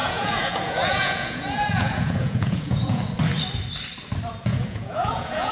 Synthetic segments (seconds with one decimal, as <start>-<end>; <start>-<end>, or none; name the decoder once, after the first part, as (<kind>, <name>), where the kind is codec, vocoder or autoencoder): 0.0-3.0 (vocoder, Vocos); 4.5-5.5